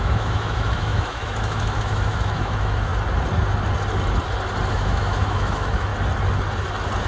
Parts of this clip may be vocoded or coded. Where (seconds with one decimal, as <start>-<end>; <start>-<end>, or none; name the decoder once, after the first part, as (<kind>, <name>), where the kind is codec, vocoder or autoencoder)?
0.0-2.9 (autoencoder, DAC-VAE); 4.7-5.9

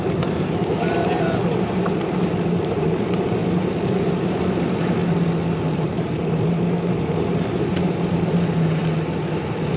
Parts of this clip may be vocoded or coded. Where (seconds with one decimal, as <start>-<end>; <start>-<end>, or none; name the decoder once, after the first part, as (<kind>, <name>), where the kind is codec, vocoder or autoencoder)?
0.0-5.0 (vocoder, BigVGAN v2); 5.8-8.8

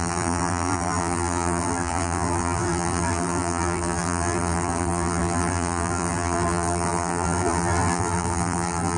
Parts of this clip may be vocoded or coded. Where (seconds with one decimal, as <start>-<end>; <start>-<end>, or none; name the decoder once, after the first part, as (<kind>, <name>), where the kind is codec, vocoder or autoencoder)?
0.0-9.0 (vocoder, BigVGAN v2)

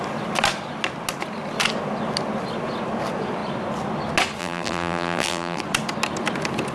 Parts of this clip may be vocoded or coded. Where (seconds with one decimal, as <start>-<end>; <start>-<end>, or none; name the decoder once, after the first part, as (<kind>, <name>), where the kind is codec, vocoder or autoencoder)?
4.4-5.6 (vocoder, BigVGAN v2)

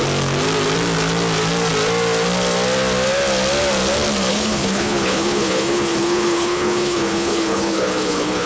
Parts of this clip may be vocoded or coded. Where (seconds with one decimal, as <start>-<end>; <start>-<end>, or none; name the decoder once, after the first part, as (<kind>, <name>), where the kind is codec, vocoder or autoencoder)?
4.3-8.5 (codec, HILCodec)